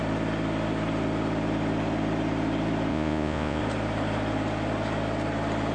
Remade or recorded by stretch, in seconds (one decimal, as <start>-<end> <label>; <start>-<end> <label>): 0.0-2.9 recorded; 2.9-3.6 remade; 3.6-5.7 recorded